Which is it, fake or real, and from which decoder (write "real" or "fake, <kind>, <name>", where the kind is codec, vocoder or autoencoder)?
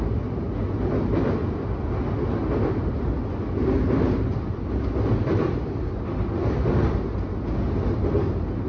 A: real